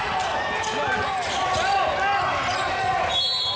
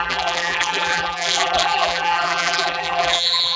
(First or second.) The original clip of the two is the first